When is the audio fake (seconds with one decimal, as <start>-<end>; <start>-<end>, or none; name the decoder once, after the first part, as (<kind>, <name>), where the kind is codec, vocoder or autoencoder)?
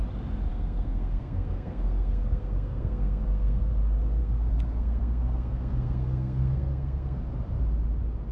0.5-3.7 (codec, SNAC); 4.2-7.2